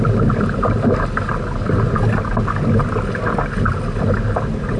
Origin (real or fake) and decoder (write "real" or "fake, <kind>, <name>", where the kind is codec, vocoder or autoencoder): real